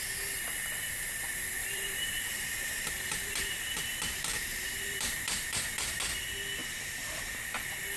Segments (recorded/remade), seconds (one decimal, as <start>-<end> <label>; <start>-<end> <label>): 0.0-1.6 recorded; 1.6-6.0 remade; 6.0-6.6 recorded; 6.6-7.4 remade; 7.4-8.0 recorded